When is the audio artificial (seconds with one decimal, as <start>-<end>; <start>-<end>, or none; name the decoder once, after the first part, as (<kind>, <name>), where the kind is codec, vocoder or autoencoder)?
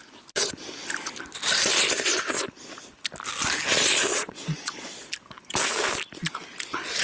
4.1-5.1 (vocoder, Vocos)